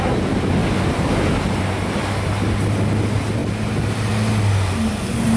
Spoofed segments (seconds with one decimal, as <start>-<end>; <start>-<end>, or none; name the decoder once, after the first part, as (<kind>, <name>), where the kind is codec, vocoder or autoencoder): 0.6-1.2 (vocoder, BigVGAN v2); 3.4-4.1